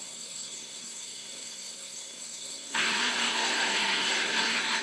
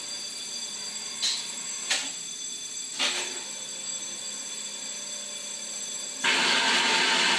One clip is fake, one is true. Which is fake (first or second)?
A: first